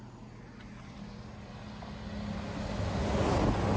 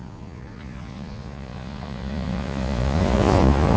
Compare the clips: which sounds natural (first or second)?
first